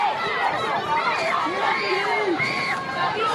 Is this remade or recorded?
remade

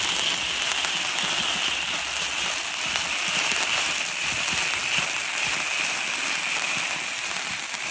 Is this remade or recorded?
recorded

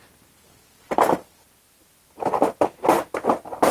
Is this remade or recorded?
recorded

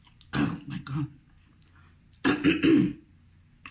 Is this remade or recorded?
recorded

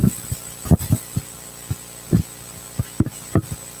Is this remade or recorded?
recorded